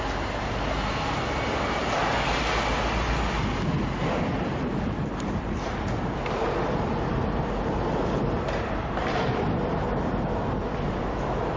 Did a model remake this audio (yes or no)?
no